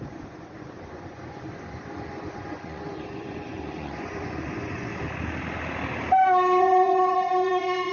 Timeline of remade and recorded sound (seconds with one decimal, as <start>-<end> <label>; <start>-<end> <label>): 0.0-4.9 remade; 4.9-6.6 recorded; 6.6-7.9 remade